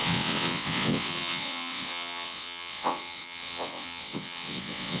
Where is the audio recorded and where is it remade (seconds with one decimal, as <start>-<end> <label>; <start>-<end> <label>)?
0.0-5.0 remade